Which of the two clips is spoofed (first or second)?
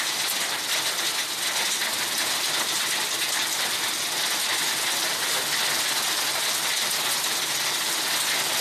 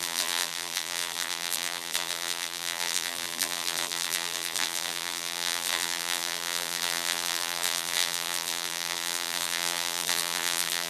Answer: second